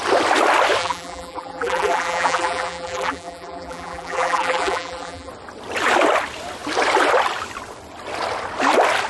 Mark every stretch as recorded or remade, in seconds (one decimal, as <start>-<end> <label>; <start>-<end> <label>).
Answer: 0.0-0.8 recorded; 0.8-5.3 remade; 5.3-9.1 recorded